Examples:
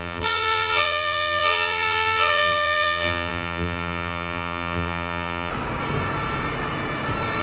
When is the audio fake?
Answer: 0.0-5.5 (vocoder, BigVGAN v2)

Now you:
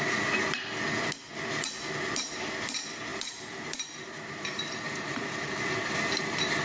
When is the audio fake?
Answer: 3.1-6.6 (vocoder, BigVGAN v2)

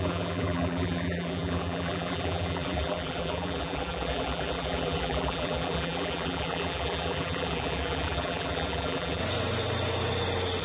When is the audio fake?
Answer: 0.0-9.2 (vocoder, BigVGAN v2)

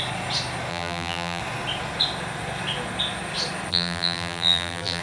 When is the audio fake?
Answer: 0.7-1.4 (vocoder, BigVGAN v2); 3.7-5.0

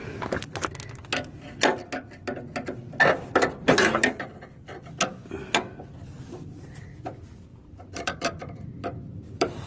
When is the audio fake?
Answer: 7.5-9.7 (vocoder, BigVGAN v2)